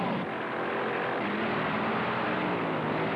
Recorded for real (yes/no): yes